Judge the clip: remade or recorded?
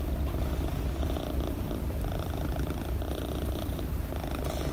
recorded